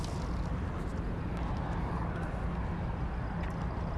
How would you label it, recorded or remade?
recorded